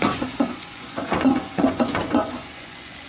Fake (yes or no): yes